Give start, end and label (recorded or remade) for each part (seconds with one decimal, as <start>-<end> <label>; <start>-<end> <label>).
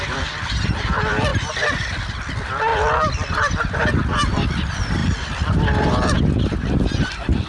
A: 0.0-1.3 remade; 1.3-2.1 recorded; 2.1-7.5 remade